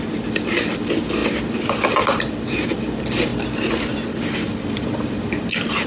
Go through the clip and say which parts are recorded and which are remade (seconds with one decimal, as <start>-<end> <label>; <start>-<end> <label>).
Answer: 0.0-1.2 recorded; 1.2-2.0 remade; 2.0-3.3 recorded; 3.3-5.3 remade; 5.3-5.9 recorded